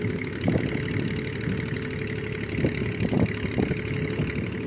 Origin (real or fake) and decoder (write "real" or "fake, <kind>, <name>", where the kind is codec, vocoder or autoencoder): real